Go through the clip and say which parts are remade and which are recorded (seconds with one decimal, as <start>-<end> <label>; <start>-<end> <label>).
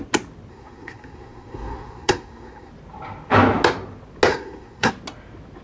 0.0-0.5 recorded; 0.5-2.7 remade; 2.7-4.3 recorded; 4.3-4.9 remade; 4.9-5.6 recorded